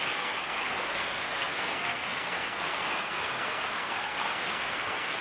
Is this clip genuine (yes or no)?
no